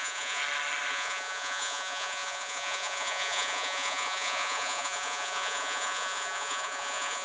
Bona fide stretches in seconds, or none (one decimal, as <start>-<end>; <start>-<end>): 0.4-0.9